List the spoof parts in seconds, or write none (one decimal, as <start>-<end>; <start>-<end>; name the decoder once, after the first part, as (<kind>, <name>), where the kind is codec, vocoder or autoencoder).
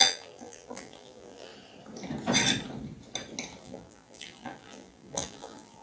0.0-1.5 (vocoder, BigVGAN v2); 3.6-5.8